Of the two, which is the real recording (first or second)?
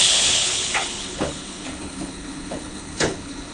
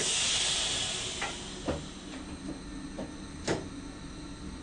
second